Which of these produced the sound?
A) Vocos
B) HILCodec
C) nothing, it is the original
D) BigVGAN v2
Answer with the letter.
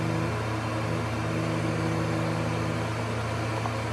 C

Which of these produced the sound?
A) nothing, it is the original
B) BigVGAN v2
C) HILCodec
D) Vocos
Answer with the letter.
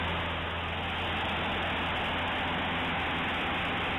A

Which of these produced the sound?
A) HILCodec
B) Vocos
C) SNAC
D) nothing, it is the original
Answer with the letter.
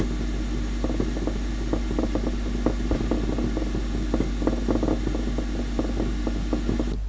D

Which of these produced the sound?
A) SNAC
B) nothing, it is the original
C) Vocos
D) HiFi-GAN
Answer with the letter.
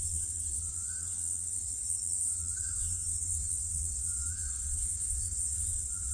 C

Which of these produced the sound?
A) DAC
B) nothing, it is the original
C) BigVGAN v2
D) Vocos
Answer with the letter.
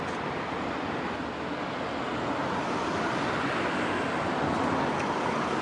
B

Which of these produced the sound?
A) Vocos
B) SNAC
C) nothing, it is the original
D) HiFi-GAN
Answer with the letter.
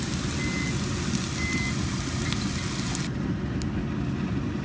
C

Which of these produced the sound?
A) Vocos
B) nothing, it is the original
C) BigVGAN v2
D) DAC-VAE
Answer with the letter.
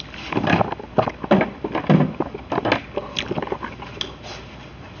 B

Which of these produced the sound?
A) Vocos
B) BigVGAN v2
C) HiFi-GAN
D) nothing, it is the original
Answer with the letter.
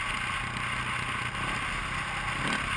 D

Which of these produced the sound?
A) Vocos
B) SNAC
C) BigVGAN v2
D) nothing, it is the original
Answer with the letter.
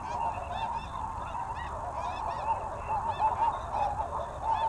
D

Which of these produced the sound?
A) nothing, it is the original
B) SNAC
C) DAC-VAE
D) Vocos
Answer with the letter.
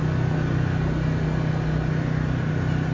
A